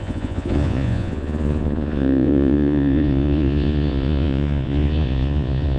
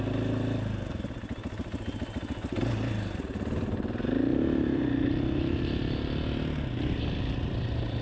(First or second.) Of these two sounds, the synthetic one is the first